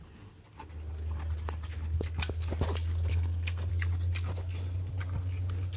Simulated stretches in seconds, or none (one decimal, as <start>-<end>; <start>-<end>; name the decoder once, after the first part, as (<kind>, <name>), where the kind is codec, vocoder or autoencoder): 3.1-3.7 (codec, SNAC)